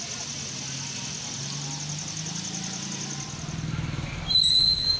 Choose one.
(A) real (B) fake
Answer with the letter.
A